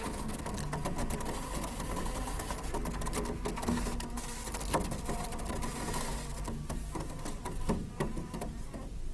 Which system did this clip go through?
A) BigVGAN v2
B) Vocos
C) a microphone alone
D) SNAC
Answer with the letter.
C